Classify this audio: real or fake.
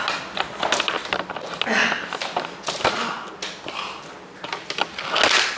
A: real